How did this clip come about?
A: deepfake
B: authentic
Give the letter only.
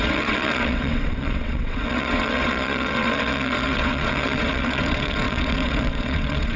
A